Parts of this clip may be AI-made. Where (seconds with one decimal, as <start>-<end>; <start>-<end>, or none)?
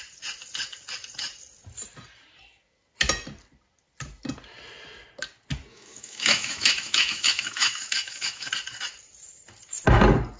5.7-8.5